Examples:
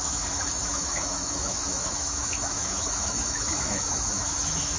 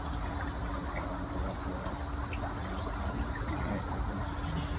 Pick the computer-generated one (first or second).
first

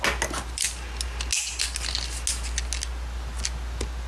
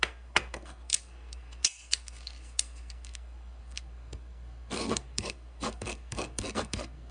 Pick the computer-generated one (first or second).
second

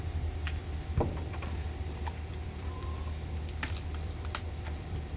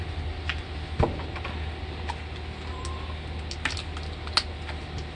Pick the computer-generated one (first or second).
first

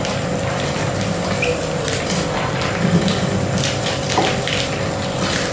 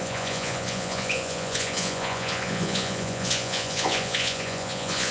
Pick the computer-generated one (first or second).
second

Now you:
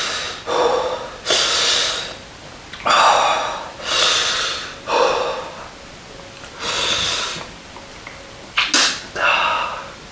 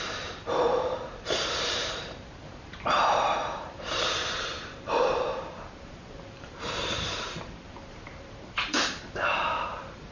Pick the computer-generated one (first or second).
second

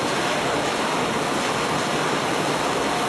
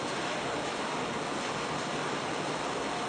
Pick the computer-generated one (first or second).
first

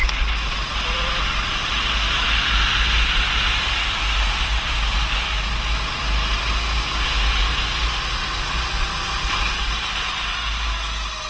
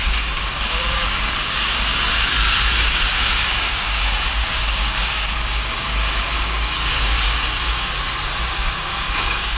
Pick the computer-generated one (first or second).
second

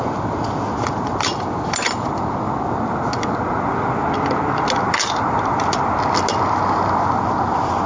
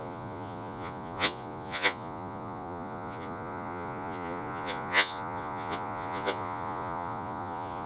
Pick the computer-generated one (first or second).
second